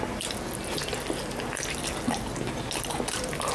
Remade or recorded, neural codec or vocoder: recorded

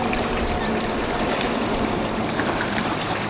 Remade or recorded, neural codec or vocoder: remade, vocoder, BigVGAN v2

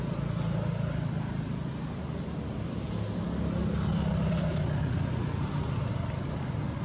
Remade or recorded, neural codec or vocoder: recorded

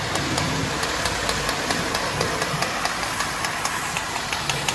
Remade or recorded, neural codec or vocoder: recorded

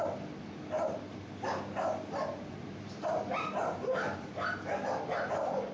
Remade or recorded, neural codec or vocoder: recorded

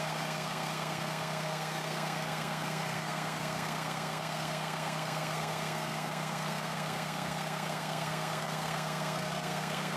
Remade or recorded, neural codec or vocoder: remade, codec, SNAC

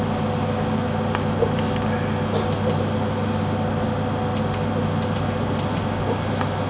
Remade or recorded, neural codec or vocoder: recorded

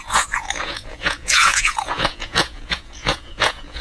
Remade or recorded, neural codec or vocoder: remade, vocoder, Vocos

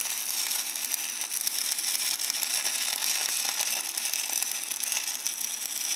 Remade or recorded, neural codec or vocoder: recorded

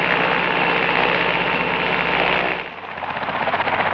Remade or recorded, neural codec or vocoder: recorded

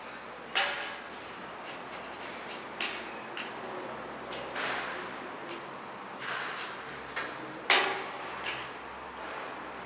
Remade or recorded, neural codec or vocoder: recorded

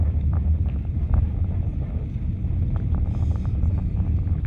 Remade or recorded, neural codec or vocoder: recorded